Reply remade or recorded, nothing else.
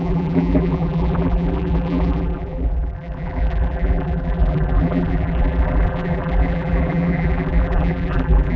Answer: remade